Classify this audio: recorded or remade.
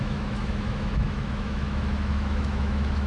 remade